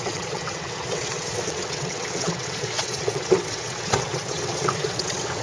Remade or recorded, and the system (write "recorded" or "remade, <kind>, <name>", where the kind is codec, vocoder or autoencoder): remade, vocoder, WaveNeXt